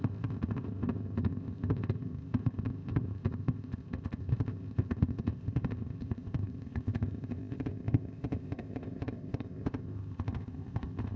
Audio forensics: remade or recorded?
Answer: remade